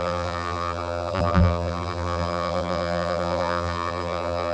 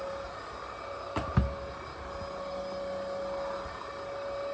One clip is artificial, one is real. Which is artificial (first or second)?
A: first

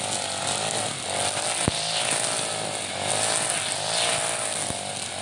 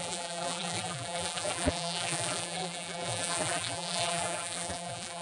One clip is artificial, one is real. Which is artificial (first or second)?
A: second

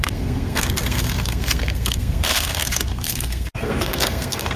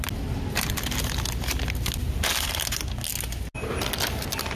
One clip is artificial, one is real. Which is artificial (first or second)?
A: first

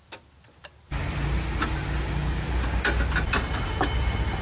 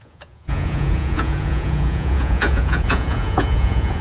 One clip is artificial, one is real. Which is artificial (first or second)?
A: second